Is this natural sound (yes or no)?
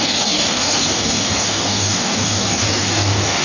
no